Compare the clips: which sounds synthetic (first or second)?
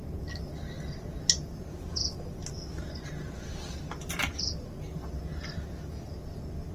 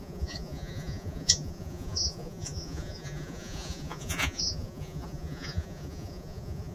second